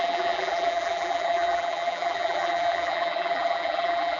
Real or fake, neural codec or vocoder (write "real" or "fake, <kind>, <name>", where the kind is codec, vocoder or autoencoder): fake, vocoder, BigVGAN v2